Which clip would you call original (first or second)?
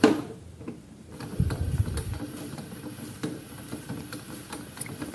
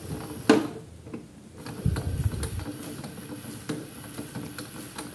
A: second